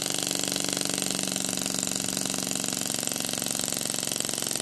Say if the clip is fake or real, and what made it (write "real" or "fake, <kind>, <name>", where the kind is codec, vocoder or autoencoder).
real